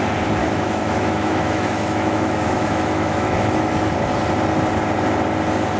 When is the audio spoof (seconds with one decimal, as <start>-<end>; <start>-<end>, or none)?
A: 0.4-3.9